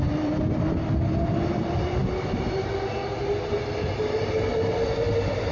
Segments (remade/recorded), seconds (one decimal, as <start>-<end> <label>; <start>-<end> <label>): 0.0-5.5 recorded